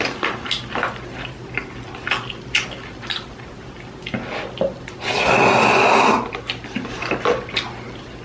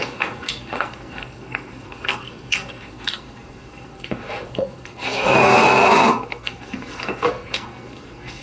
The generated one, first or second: second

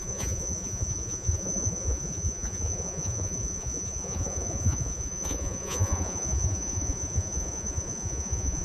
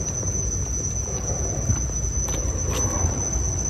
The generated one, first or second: first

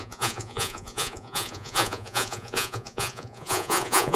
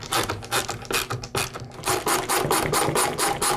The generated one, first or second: first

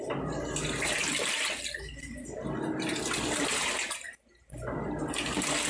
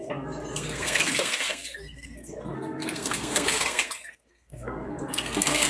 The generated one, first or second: second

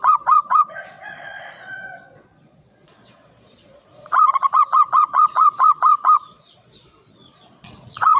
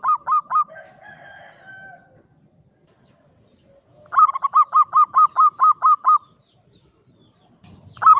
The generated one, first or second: first